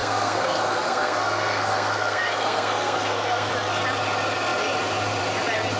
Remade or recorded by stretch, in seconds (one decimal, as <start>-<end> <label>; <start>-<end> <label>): 0.0-3.5 remade; 3.5-5.8 recorded